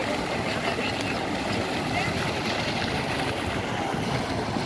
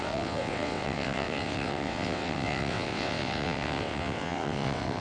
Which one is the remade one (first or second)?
second